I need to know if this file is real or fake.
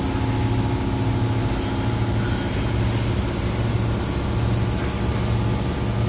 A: real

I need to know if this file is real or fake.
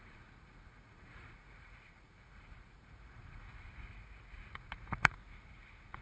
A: fake